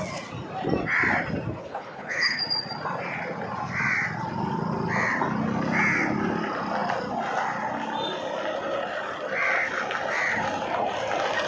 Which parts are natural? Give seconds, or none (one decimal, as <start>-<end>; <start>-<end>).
0.0-1.6; 2.4-11.5